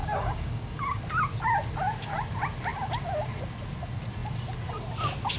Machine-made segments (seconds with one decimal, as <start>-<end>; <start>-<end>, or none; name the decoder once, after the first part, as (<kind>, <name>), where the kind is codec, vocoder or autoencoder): 0.0-1.0 (codec, DAC)